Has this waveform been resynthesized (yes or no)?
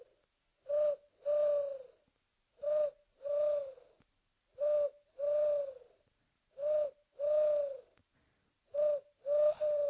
no